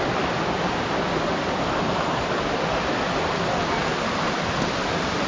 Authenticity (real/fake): real